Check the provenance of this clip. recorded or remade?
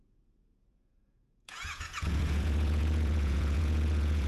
remade